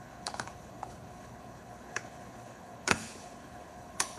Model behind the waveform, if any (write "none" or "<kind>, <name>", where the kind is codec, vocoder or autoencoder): codec, HILCodec